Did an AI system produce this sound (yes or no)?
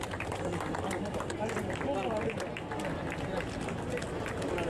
no